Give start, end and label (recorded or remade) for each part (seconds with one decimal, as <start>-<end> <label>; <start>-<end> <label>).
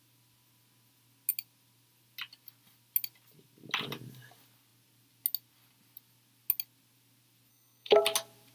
0.0-7.5 recorded; 7.5-8.0 remade; 8.0-8.5 recorded